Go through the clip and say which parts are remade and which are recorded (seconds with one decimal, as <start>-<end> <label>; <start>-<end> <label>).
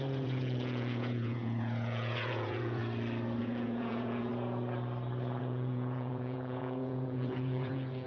0.0-2.8 remade; 2.8-3.4 recorded; 3.4-4.3 remade; 4.3-5.4 recorded; 5.4-8.1 remade